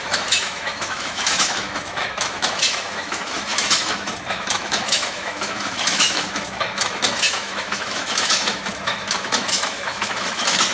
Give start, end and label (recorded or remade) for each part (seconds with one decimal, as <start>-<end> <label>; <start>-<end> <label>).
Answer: 0.0-10.7 remade